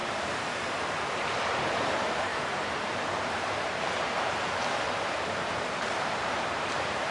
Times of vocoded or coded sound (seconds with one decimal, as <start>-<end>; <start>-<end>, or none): 0.0-7.1